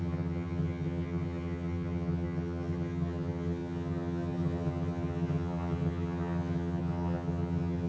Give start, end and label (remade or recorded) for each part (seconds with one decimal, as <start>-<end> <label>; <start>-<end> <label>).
0.0-7.9 remade